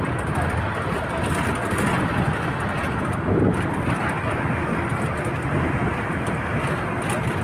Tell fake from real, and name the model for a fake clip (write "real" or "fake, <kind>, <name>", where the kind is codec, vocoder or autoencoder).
real